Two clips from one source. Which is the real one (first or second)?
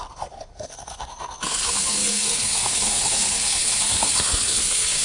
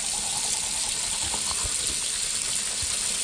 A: second